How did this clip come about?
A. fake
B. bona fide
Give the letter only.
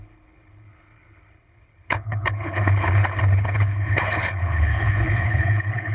A